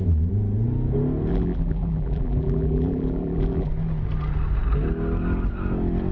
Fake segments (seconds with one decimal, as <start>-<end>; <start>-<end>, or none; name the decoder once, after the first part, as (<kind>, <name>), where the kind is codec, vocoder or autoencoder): 1.3-3.7 (vocoder, BigVGAN v2)